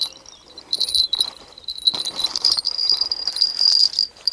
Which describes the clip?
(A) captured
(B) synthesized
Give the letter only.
B